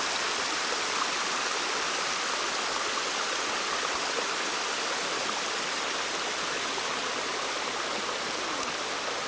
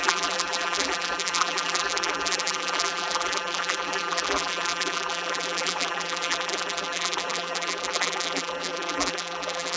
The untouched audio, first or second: first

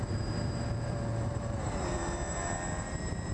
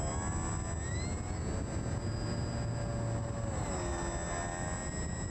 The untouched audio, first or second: second